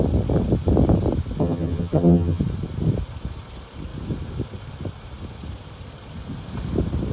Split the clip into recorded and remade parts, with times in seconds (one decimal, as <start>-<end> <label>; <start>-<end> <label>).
0.0-1.4 recorded; 1.4-2.4 remade; 2.4-7.1 recorded